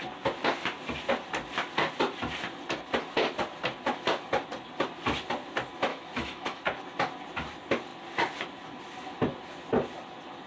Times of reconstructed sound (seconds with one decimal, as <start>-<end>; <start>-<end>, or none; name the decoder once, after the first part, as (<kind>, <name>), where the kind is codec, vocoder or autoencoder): 5.9-6.6 (autoencoder, DAC-VAE)